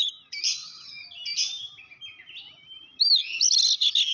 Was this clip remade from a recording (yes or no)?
no